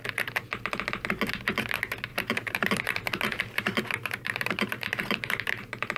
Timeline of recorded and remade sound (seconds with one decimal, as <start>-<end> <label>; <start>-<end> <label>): 0.0-2.1 recorded; 2.1-5.6 remade; 5.6-6.0 recorded